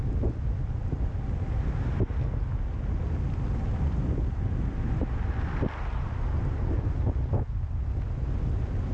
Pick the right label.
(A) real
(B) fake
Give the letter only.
A